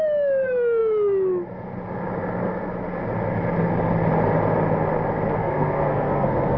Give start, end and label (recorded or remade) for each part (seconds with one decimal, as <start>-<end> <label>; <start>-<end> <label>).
0.0-5.4 recorded; 5.4-6.6 remade